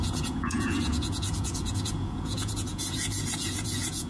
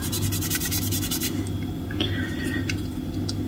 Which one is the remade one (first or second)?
first